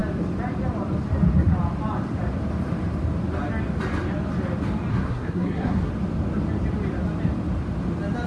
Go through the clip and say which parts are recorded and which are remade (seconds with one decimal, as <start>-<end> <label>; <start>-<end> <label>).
0.0-4.9 recorded; 4.9-5.9 remade; 5.9-8.3 recorded